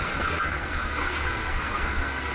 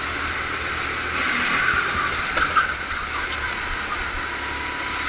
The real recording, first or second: second